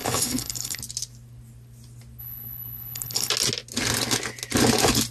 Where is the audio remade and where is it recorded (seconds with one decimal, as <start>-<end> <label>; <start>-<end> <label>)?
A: 0.0-0.8 remade; 0.8-2.2 recorded; 2.2-3.3 remade; 3.3-5.1 recorded